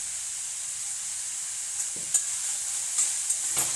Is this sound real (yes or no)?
yes